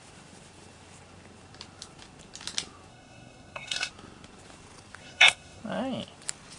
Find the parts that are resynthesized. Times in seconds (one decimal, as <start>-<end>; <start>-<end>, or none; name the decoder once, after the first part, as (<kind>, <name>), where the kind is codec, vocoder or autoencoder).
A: 2.9-3.9 (codec, SNAC); 5.0-5.6

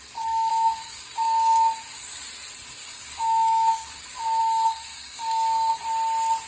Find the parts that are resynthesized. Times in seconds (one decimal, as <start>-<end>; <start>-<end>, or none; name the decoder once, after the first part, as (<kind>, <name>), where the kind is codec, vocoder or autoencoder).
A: 0.5-2.2 (codec, DAC); 2.8-4.4; 4.9-5.8

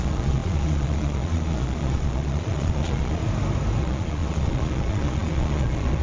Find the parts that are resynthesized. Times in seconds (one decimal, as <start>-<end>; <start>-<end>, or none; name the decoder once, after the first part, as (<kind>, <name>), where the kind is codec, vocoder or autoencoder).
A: 0.0-3.2 (vocoder, Vocos); 3.8-6.0

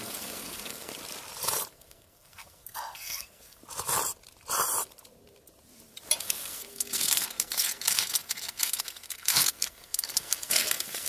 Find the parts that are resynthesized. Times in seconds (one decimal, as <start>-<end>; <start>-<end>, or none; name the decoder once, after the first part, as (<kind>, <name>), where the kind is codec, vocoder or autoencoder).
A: 0.0-0.9 (codec, SNAC); 1.7-3.6; 6.2-11.1

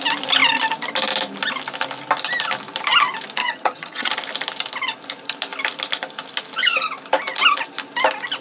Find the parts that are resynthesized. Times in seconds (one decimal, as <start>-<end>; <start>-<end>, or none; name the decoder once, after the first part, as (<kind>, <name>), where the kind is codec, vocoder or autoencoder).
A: 3.4-4.1 (vocoder, HiFi-GAN)